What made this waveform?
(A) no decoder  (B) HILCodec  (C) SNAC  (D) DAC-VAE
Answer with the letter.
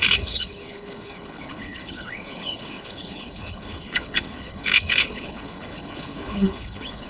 B